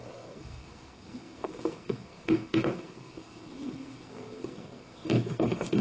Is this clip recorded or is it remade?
remade